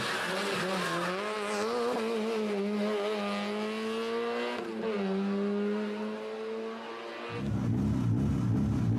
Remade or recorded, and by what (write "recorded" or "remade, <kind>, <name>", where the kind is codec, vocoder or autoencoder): recorded